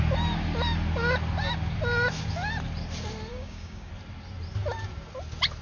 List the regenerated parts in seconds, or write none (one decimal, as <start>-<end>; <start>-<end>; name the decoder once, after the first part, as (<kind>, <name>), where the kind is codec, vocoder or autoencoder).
3.3-3.9 (codec, DAC)